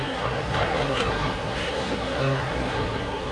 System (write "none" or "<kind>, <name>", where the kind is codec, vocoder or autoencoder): codec, SNAC